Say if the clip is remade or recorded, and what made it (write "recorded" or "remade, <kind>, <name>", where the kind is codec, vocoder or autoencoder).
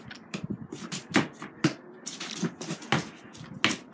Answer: recorded